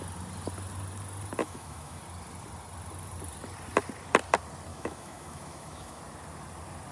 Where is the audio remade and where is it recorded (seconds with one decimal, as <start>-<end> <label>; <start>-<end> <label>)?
0.0-1.4 recorded; 1.4-2.0 remade; 2.0-4.7 recorded; 4.7-6.0 remade; 6.0-6.9 recorded